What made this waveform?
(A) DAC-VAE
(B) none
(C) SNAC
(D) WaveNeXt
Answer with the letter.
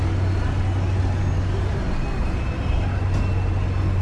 B